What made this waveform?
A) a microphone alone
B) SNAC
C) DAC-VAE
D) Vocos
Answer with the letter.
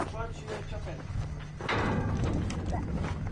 A